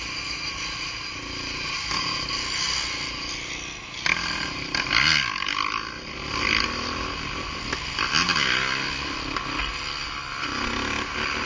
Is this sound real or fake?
real